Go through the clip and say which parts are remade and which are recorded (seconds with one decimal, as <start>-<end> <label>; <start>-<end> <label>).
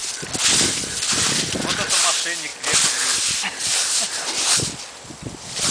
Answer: 0.0-2.5 recorded; 2.5-4.8 remade; 4.8-5.7 recorded